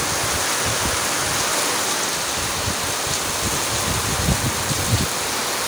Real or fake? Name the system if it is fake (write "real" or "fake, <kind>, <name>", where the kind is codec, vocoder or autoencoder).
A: real